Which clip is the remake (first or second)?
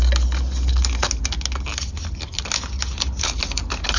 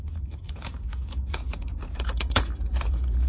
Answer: second